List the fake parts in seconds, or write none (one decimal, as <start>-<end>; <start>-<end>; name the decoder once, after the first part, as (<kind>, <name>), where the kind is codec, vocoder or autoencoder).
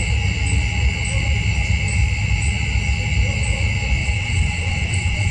4.0-5.3 (vocoder, WaveNeXt)